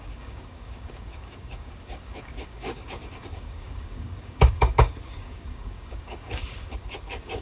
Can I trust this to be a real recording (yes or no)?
no